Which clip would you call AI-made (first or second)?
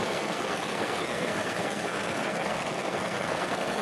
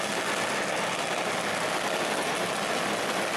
first